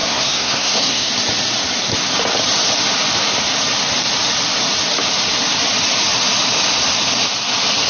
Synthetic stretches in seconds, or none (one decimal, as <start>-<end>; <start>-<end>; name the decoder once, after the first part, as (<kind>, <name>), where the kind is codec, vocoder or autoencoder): 0.0-1.1 (codec, SNAC)